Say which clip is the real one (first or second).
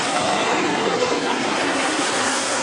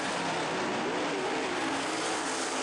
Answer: second